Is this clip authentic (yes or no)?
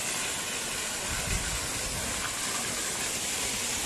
yes